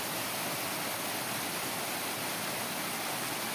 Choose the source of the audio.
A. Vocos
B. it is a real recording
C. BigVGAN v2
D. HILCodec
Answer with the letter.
B